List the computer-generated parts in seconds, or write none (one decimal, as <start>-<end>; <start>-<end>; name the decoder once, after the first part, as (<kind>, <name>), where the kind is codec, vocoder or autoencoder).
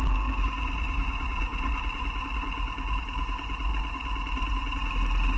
none